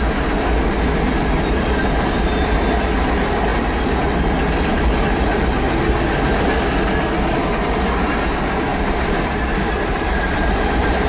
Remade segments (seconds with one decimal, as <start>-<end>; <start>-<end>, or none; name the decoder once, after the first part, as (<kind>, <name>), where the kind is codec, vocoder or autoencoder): 8.7-11.1 (vocoder, BigVGAN v2)